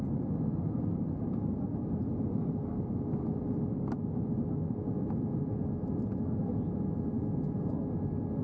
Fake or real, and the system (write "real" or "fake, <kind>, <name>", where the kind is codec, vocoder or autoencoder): real